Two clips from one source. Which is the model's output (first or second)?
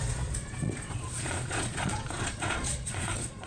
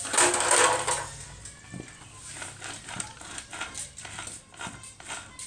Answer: first